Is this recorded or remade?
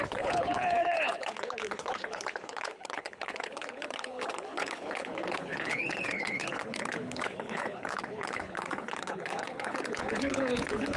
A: remade